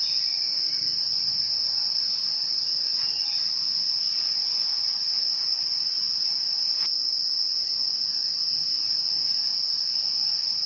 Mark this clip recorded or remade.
recorded